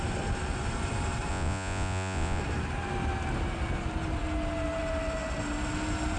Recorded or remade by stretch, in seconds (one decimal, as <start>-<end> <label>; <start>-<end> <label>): 0.0-1.3 recorded; 1.3-2.4 remade; 2.4-6.2 recorded